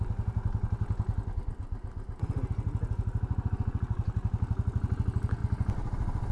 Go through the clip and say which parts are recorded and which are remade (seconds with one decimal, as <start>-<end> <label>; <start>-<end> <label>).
0.0-6.3 recorded